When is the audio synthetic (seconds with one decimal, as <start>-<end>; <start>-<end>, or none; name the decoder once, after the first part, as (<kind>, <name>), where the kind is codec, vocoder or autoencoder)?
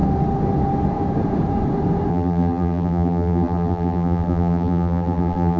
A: 2.1-5.6 (vocoder, BigVGAN v2)